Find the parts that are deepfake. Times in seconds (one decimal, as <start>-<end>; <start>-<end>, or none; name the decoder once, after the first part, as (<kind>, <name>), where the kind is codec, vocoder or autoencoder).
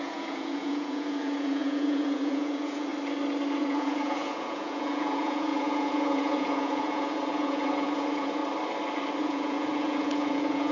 0.0-2.9 (vocoder, Vocos); 3.6-8.4; 9.2-10.7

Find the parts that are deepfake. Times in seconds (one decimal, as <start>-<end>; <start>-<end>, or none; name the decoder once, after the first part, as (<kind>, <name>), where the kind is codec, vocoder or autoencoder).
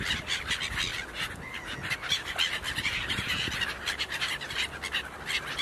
none